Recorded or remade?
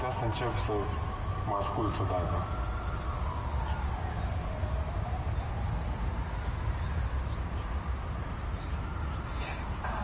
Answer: recorded